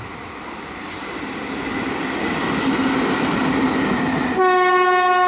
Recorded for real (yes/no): yes